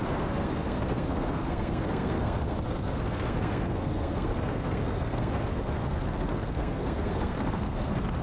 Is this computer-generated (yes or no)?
yes